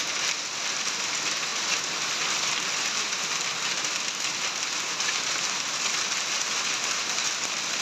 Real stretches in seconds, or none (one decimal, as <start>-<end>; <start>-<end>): 0.0-7.8